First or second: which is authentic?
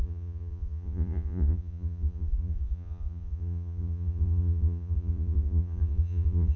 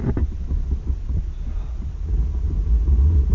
second